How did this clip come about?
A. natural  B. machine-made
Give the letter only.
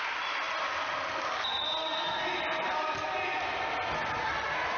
A